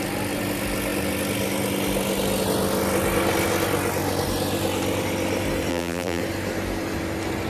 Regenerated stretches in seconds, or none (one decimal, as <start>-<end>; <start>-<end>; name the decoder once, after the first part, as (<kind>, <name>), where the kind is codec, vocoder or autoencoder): 5.7-6.2 (vocoder, BigVGAN v2)

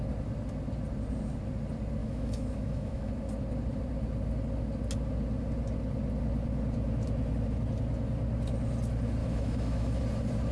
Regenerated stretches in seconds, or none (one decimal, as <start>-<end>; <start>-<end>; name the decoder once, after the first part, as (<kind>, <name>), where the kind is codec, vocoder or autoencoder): 2.0-3.1 (autoencoder, DAC-VAE); 9.2-10.0

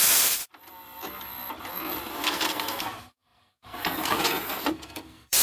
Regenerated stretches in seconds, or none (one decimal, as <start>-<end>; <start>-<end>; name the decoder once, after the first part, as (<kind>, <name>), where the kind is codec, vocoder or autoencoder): 0.0-0.4 (codec, SNAC); 2.1-5.4

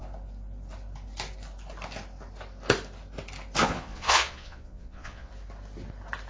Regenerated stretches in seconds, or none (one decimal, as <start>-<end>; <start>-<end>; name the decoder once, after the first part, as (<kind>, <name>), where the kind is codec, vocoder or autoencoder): 3.6-5.3 (vocoder, Vocos)

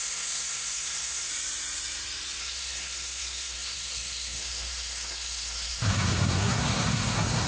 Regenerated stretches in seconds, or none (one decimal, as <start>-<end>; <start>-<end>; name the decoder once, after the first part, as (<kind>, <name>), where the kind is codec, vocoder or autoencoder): 0.0-1.3 (codec, SNAC); 2.4-7.5

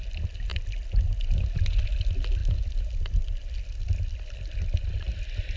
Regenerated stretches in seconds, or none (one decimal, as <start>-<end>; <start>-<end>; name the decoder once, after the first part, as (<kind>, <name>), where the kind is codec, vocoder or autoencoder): none